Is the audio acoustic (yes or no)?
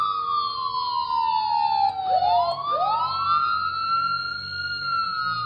yes